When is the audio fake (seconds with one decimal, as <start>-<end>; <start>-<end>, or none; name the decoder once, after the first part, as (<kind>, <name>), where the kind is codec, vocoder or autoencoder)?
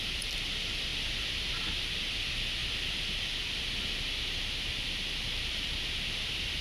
none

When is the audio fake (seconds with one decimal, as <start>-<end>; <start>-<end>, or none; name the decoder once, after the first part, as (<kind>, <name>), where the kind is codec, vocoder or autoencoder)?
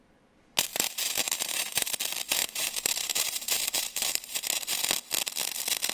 0.7-2.0 (vocoder, BigVGAN v2); 2.4-4.8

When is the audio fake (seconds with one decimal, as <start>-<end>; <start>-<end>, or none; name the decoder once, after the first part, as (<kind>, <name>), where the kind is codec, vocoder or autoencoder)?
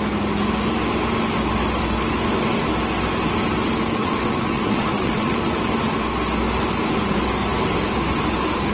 4.0-5.4 (vocoder, WaveNeXt)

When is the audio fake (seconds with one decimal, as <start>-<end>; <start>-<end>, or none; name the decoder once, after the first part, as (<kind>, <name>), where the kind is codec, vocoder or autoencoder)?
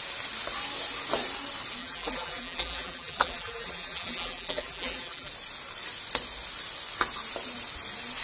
1.8-5.3 (vocoder, BigVGAN v2)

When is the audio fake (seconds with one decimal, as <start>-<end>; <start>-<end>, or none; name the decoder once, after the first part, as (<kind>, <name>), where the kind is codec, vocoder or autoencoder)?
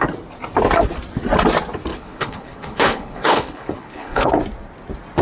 1.9-4.3 (codec, HILCodec)